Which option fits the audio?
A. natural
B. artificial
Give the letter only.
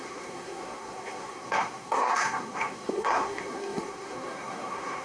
B